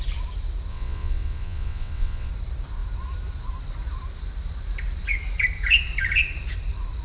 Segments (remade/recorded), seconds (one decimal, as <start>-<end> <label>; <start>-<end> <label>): 0.0-0.7 recorded; 0.7-2.3 remade; 2.3-7.0 recorded